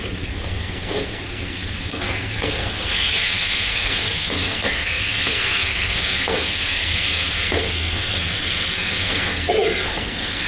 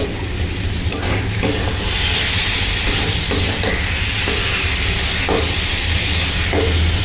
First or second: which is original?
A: second